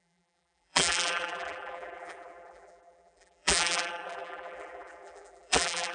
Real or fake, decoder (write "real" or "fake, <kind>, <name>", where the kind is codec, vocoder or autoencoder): fake, vocoder, BigVGAN v2